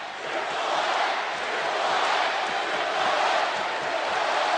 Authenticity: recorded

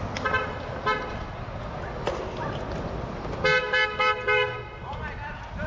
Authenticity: recorded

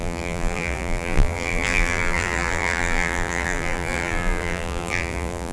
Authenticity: remade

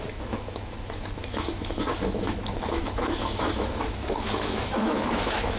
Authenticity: remade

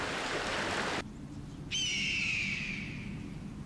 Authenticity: recorded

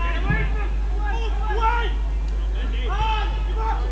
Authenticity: recorded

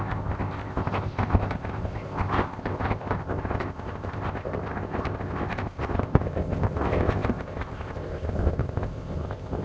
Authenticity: remade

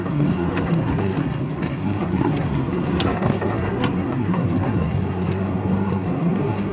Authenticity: remade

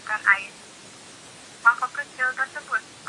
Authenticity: recorded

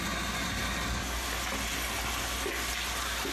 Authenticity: recorded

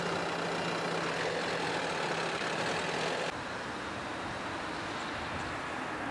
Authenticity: recorded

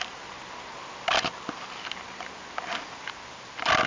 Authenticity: recorded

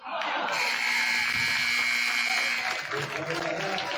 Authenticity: recorded